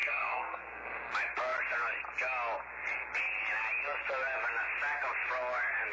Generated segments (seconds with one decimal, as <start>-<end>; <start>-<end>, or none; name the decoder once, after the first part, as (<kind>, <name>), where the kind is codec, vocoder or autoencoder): 0.0-1.1 (codec, SNAC)